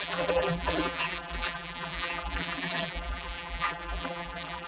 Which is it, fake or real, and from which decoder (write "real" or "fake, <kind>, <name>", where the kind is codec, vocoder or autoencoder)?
fake, vocoder, BigVGAN v2